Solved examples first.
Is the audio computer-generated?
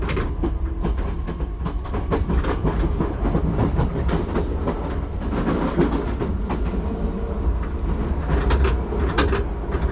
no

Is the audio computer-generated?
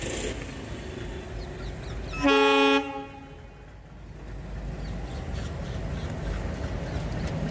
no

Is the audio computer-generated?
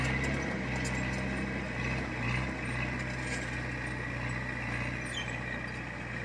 no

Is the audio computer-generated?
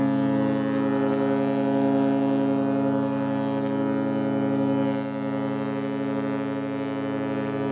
no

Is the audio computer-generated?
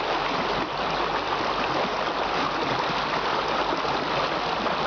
no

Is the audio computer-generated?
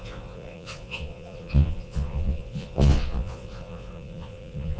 yes